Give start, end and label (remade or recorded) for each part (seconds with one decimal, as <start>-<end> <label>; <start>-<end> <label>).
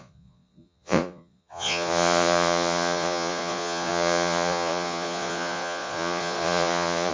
0.0-7.1 remade